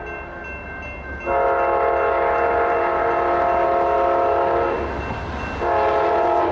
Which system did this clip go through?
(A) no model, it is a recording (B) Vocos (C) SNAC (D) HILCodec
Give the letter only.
A